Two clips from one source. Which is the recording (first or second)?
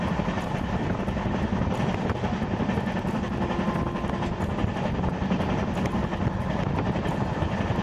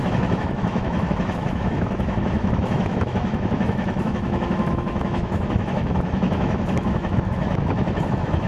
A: first